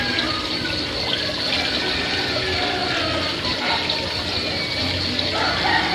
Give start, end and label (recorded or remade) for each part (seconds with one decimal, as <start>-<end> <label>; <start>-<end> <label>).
0.0-5.9 recorded